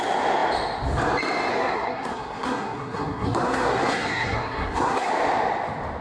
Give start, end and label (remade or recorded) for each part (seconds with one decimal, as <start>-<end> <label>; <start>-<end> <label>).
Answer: 0.0-1.5 recorded; 1.5-5.1 remade; 5.1-6.0 recorded